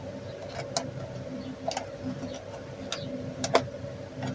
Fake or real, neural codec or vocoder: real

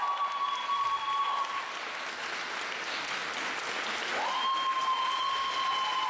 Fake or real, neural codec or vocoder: real